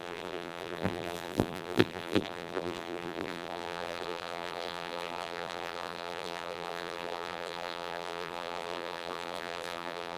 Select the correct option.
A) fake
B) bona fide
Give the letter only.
A